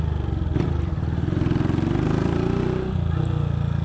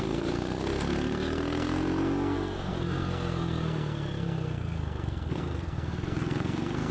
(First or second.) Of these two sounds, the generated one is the second